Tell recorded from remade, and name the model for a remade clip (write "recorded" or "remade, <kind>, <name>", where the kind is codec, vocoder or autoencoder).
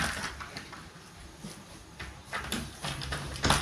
recorded